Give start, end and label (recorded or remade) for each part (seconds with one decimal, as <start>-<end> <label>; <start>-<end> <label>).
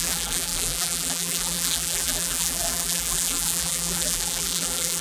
0.0-5.0 remade